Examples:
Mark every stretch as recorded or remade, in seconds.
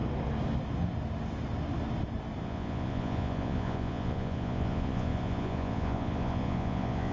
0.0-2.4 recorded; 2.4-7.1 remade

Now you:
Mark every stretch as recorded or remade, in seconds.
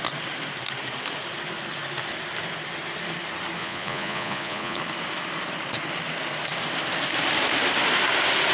0.0-3.6 recorded; 3.6-4.8 remade; 4.8-8.5 recorded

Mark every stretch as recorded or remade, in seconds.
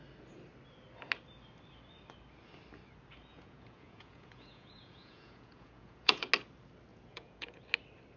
0.0-3.3 recorded; 3.3-6.3 remade; 6.3-6.9 recorded; 6.9-7.6 remade; 7.6-8.2 recorded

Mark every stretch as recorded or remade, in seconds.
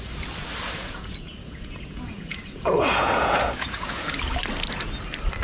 0.0-0.8 recorded; 0.8-4.0 remade; 4.0-5.4 recorded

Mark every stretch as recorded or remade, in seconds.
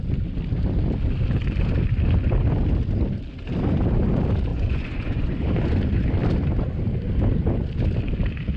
0.0-4.5 recorded; 4.5-5.8 remade; 5.8-8.6 recorded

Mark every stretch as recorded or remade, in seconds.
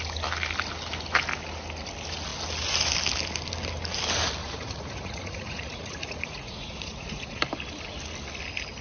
0.0-4.4 recorded; 4.4-7.4 remade; 7.4-8.8 recorded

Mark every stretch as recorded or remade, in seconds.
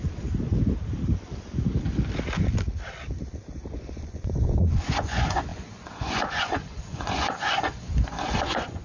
0.0-3.7 recorded; 3.7-8.8 remade